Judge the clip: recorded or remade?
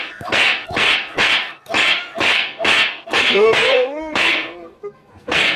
remade